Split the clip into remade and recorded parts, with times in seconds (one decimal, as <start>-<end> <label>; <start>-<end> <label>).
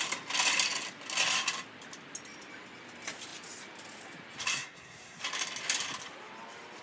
0.0-4.5 recorded; 4.5-5.2 remade; 5.2-6.8 recorded